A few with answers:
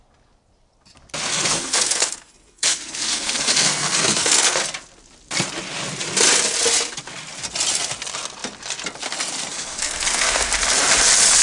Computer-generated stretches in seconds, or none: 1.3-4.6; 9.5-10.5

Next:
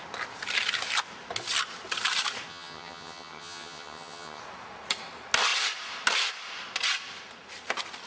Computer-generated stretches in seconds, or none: 2.5-4.4

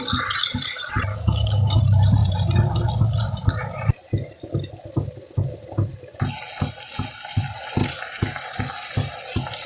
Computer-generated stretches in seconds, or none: 1.1-1.8